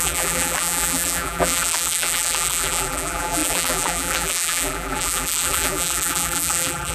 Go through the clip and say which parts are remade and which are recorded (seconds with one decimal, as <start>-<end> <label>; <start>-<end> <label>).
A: 0.0-6.9 remade

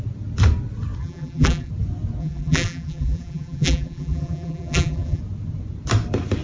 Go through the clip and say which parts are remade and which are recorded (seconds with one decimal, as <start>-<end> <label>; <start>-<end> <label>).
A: 0.0-1.0 recorded; 1.0-1.7 remade; 1.7-2.2 recorded; 2.2-5.2 remade; 5.2-6.4 recorded